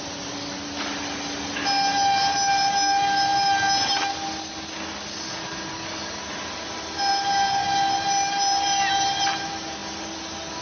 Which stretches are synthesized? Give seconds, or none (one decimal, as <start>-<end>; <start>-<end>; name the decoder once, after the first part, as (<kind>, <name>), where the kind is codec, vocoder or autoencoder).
none